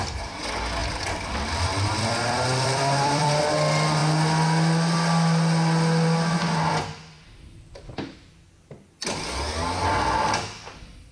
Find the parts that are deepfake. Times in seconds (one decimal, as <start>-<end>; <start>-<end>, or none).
0.8-3.4